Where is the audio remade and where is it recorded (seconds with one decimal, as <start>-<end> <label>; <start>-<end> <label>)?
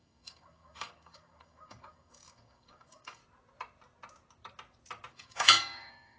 0.0-3.2 remade; 3.2-5.1 recorded; 5.1-6.2 remade